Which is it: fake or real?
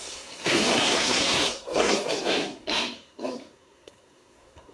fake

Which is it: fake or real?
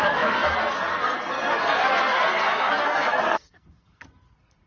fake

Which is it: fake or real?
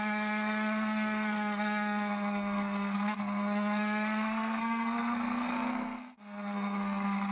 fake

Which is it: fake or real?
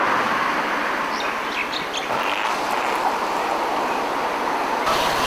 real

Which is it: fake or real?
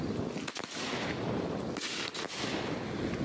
real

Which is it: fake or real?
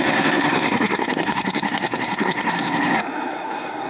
fake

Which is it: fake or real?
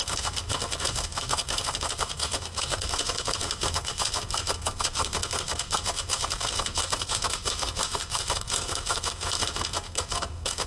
fake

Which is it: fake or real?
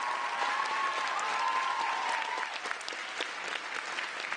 real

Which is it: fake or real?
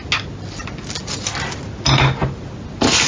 real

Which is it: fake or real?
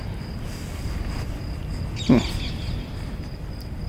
real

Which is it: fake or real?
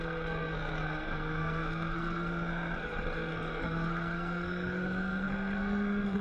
fake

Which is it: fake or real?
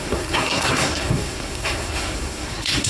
fake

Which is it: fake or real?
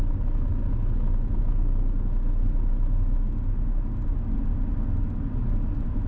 real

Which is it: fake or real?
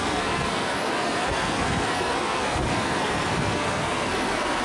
fake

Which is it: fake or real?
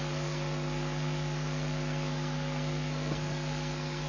fake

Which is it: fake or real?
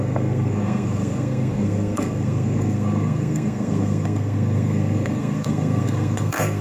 fake